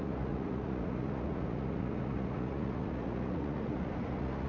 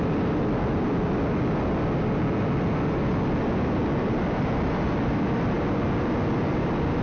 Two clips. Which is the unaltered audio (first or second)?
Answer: second